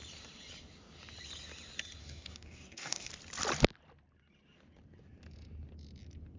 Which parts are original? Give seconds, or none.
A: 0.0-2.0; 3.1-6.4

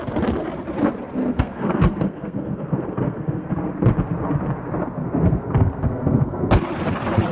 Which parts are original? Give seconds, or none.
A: 0.0-1.2; 3.5-5.0; 6.5-7.3